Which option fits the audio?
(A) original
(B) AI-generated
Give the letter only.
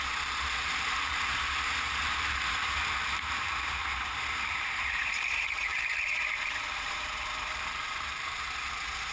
B